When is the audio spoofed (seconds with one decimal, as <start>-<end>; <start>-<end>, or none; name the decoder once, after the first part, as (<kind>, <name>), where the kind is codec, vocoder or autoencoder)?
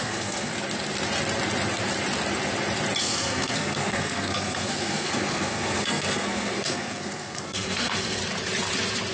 0.0-0.5 (codec, SNAC); 3.0-8.2